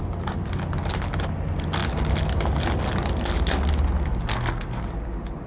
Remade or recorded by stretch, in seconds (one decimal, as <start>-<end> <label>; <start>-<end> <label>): 0.0-4.3 recorded; 4.3-4.9 remade; 4.9-5.5 recorded